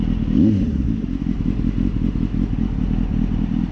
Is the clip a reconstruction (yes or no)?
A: no